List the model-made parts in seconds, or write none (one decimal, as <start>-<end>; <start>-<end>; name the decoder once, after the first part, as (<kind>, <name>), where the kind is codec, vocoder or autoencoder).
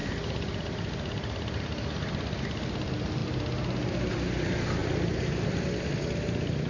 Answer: none